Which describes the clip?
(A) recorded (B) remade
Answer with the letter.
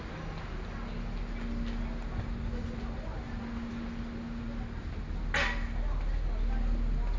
A